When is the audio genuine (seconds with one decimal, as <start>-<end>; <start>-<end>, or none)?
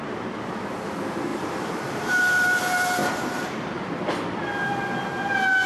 0.0-1.3; 2.2-3.0; 4.1-5.7